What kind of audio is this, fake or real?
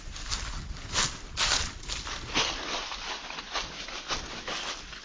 real